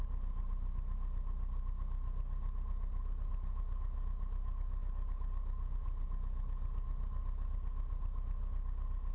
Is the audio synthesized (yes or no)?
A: no